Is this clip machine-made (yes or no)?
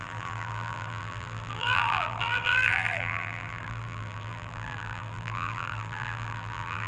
yes